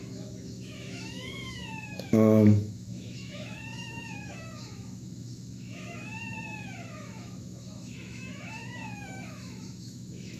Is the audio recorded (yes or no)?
no